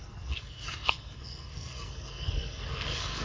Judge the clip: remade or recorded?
remade